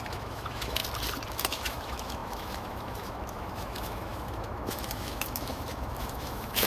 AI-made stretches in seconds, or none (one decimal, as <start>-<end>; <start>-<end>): 0.0-0.8; 1.3-6.7